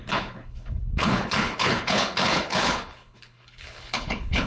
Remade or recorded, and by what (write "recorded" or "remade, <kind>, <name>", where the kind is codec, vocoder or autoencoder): remade, codec, HILCodec